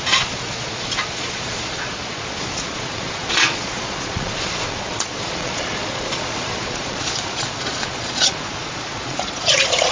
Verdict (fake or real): fake